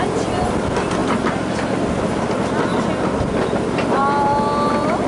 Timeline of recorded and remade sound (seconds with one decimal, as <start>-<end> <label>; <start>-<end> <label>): 0.0-5.1 recorded